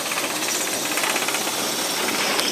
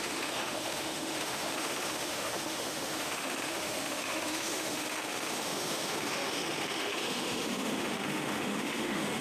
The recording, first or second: first